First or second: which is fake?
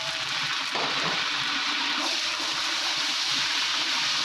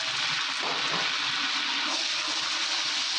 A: first